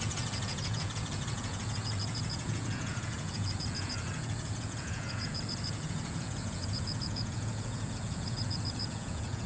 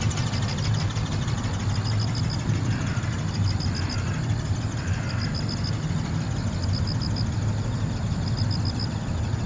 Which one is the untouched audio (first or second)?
second